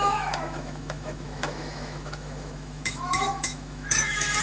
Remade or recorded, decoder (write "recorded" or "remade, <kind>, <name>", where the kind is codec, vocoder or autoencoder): remade, autoencoder, DAC-VAE